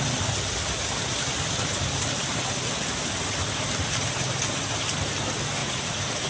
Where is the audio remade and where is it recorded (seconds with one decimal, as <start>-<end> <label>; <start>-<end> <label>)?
0.0-5.6 recorded; 5.6-6.3 remade